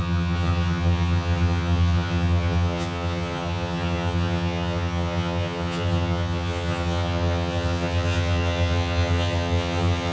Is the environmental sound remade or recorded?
remade